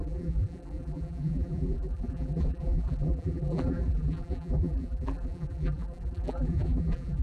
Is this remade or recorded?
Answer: remade